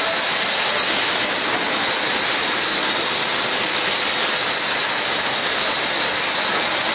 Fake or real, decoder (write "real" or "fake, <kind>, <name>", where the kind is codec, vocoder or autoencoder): real